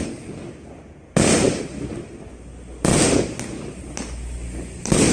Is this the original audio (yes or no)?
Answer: yes